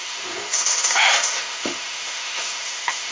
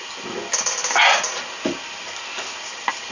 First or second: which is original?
second